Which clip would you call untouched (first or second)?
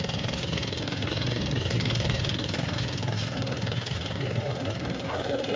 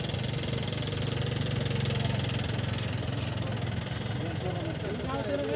second